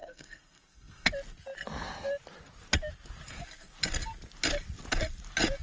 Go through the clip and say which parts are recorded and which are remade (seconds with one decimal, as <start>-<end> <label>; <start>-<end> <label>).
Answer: 0.0-1.1 remade; 1.1-5.6 recorded